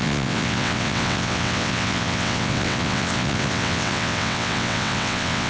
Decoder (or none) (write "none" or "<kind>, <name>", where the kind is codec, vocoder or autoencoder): vocoder, WaveNeXt